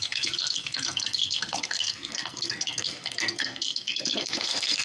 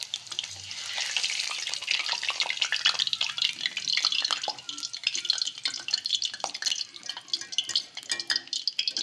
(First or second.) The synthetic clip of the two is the first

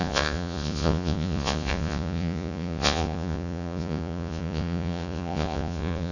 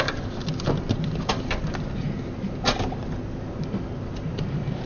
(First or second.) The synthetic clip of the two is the first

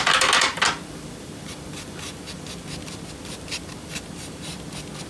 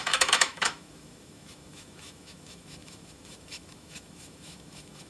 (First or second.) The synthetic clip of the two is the second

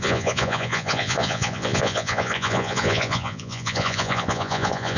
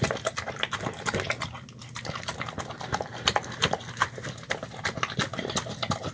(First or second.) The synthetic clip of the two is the first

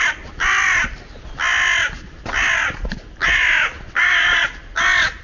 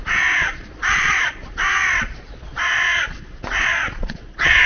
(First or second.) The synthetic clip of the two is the second